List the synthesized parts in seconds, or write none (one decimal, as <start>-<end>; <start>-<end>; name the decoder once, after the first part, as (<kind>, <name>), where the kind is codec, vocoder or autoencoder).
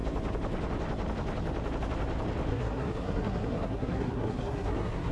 2.5-5.1 (codec, SNAC)